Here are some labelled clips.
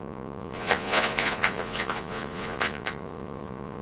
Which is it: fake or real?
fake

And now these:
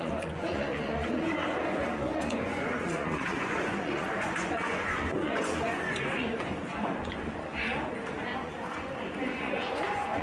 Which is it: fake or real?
fake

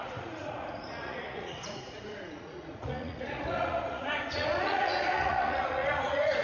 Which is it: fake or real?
fake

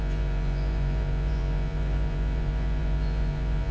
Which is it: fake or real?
fake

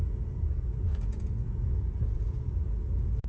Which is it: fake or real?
fake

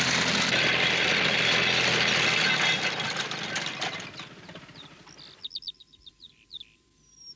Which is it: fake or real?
real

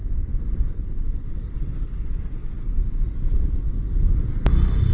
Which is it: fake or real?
real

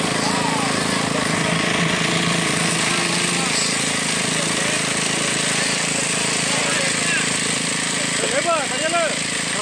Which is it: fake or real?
real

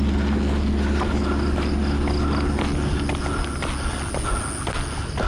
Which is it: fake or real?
real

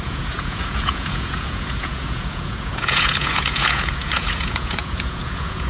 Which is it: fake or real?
fake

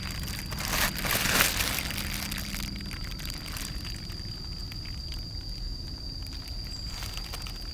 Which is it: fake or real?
real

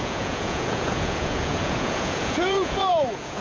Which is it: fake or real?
fake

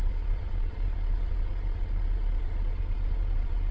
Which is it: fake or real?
fake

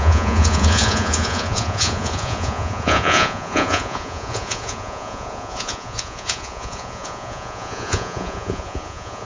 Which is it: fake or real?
fake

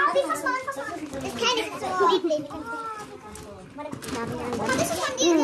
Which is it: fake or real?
real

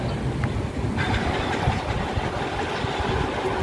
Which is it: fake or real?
real